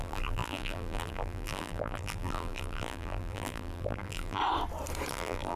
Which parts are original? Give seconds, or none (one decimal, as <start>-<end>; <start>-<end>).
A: 4.4-5.1